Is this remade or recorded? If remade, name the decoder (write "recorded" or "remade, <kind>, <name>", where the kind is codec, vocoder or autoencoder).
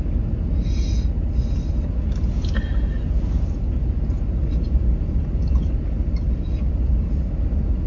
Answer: recorded